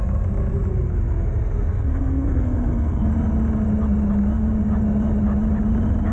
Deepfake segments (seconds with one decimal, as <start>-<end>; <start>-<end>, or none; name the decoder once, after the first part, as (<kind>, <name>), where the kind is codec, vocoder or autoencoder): 1.7-3.1 (codec, SNAC)